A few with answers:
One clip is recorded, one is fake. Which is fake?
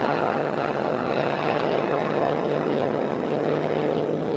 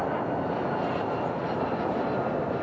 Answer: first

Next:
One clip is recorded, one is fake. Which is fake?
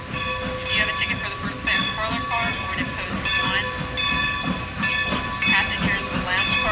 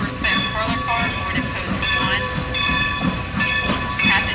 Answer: second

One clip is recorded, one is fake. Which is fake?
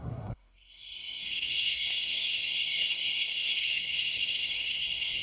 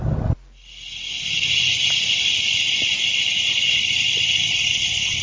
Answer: first